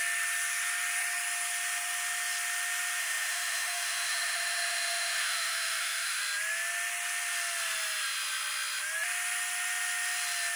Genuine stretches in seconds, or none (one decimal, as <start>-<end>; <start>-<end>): 0.0-3.0; 6.2-10.6